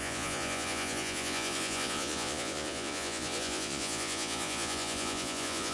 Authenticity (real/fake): fake